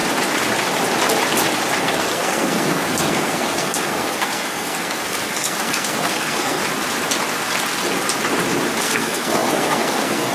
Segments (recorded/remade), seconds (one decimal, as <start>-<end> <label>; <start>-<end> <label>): 0.0-1.8 recorded; 1.8-6.6 remade; 6.6-8.8 recorded; 8.8-10.3 remade